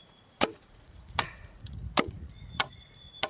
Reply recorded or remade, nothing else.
remade